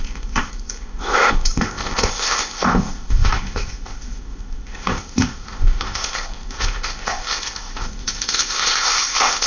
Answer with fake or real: fake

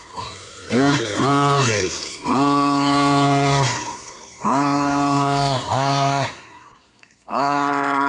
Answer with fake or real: fake